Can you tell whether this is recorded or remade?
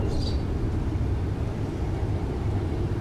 recorded